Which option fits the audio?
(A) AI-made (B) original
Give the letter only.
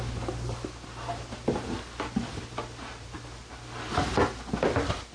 B